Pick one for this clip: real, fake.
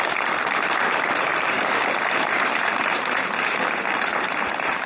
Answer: fake